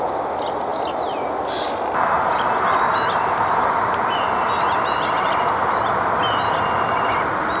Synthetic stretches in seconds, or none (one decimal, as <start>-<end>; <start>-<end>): none